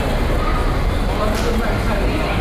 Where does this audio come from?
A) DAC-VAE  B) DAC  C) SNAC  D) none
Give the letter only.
D